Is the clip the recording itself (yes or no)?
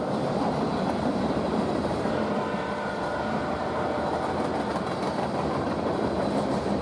no